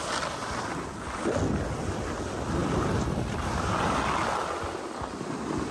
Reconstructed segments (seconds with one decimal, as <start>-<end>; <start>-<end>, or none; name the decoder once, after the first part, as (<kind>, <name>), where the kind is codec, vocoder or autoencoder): 2.6-3.7 (vocoder, BigVGAN v2)